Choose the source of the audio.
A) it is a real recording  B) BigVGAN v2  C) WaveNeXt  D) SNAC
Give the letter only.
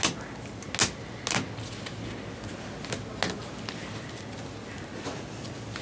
A